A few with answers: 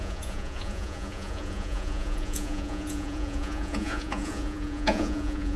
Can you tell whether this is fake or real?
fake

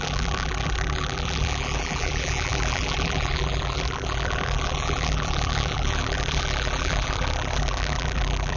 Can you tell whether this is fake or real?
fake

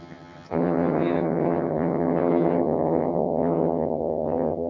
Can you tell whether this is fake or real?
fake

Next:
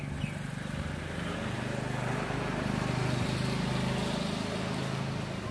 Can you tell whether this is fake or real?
real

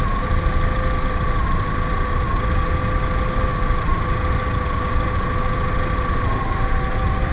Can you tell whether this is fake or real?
real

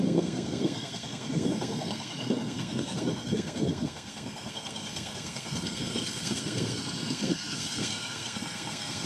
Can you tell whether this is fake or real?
fake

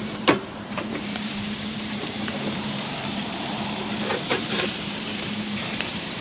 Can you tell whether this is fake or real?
fake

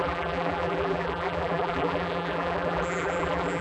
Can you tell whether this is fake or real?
fake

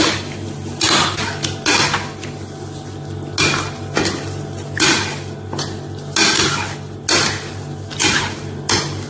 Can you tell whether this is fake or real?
real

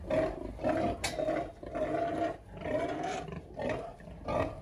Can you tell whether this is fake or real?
real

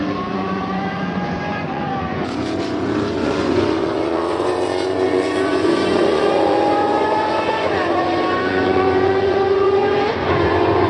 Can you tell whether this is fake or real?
fake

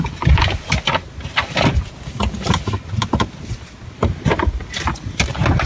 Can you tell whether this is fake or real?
real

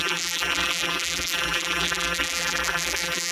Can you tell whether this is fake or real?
fake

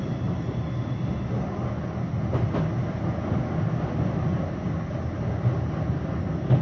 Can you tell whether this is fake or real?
real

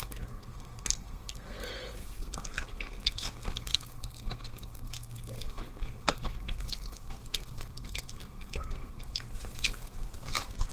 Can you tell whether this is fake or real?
fake